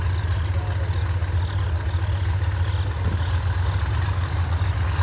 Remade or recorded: recorded